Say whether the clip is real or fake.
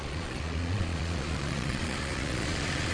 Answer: fake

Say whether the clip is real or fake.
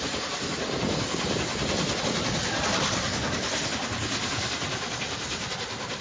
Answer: real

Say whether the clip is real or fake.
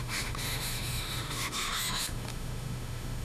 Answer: fake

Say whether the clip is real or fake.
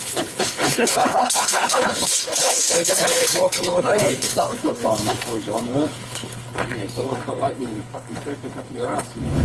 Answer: fake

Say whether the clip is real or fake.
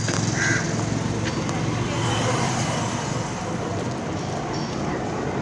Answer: real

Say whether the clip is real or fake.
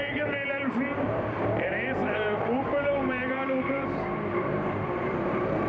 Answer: fake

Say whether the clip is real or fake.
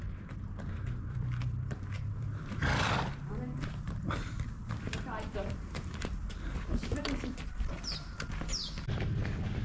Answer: fake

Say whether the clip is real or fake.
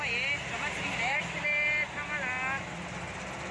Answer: real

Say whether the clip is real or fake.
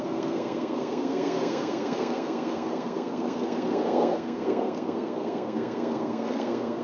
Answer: fake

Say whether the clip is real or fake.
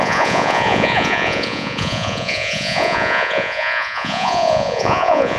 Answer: fake